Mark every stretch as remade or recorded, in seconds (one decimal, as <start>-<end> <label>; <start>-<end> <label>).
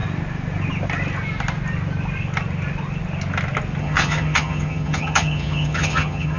0.0-3.8 recorded; 3.8-6.4 remade